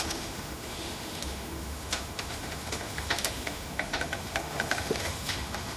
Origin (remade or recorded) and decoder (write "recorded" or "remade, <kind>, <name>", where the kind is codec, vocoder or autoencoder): remade, autoencoder, DAC-VAE